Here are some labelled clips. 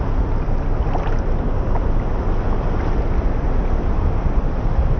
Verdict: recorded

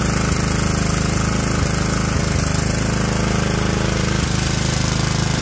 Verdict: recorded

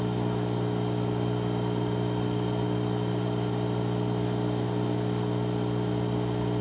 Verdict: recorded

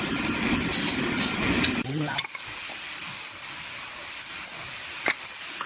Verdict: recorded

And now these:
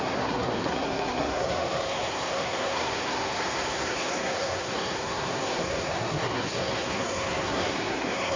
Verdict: remade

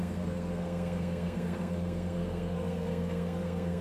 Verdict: remade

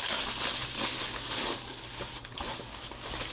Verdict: recorded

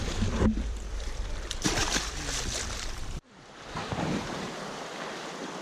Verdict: remade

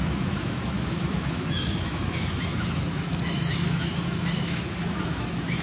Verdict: remade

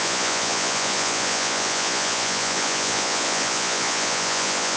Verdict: remade